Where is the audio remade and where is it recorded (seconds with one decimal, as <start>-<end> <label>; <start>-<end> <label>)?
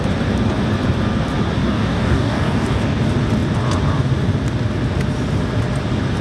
0.0-1.6 recorded; 1.6-3.0 remade; 3.0-6.2 recorded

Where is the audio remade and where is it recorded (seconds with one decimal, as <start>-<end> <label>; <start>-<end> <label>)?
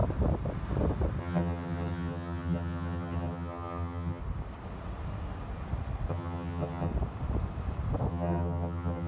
0.0-1.2 recorded; 1.2-4.2 remade; 4.2-6.1 recorded; 6.1-6.9 remade; 6.9-8.1 recorded; 8.1-9.1 remade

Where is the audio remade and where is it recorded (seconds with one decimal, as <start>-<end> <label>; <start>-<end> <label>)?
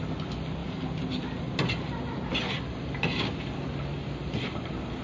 0.0-0.6 recorded; 0.6-1.2 remade; 1.2-2.3 recorded; 2.3-3.0 remade; 3.0-5.0 recorded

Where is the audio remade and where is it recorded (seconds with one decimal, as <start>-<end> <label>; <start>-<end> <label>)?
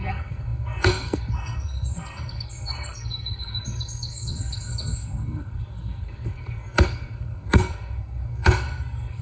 0.0-9.2 remade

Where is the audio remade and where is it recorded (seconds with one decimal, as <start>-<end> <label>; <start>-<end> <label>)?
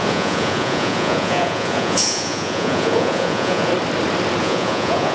0.0-3.7 remade; 3.7-4.4 recorded; 4.4-5.1 remade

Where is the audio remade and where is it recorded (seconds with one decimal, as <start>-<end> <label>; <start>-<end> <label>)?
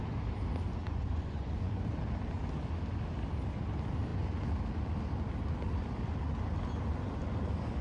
0.0-0.8 recorded; 0.8-1.8 remade; 1.8-7.8 recorded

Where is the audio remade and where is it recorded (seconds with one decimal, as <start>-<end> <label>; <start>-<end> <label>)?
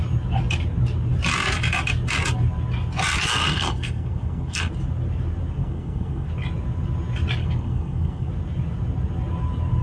0.0-3.4 recorded; 3.4-4.7 remade; 4.7-5.6 recorded; 5.6-6.3 remade; 6.3-7.4 recorded; 7.4-8.3 remade; 8.3-9.8 recorded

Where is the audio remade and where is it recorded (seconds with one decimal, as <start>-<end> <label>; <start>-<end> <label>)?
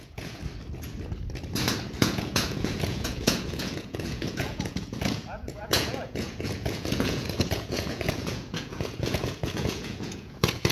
0.0-0.4 remade; 0.4-2.0 recorded; 2.0-10.7 remade